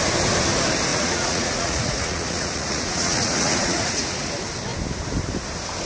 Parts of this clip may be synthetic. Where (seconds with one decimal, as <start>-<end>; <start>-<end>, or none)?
0.9-4.3